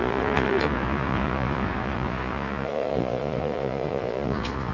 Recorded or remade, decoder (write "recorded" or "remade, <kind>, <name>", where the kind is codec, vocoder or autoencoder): remade, vocoder, Vocos